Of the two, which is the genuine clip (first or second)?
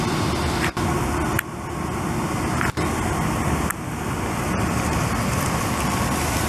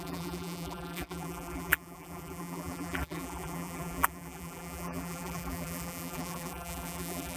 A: first